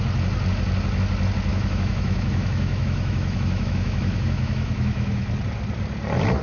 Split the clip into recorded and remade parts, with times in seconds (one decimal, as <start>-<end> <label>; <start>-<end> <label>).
0.0-1.5 recorded; 1.5-5.3 remade; 5.3-6.4 recorded